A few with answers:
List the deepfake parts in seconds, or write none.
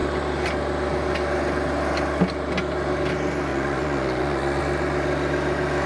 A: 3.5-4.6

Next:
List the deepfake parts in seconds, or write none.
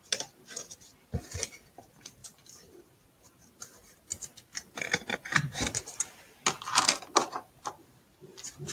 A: 2.2-6.2; 7.2-8.7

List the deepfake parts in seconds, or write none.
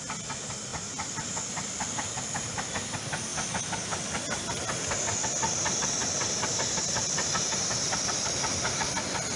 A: 6.0-8.9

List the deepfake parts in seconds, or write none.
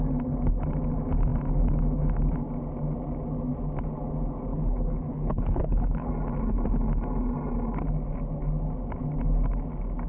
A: 4.5-6.1